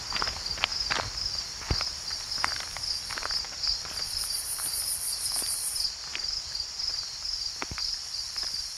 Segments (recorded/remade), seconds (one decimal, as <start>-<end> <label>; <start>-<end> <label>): 0.0-0.7 remade; 0.7-2.9 recorded; 2.9-8.8 remade